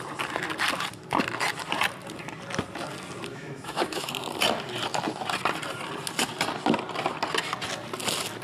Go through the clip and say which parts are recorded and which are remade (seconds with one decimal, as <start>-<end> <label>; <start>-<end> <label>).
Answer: 0.0-3.3 recorded; 3.3-4.1 remade; 4.1-8.4 recorded